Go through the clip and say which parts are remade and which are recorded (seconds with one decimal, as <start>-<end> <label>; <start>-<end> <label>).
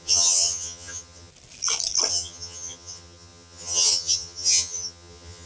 0.0-1.3 remade; 1.3-2.1 recorded; 2.1-5.5 remade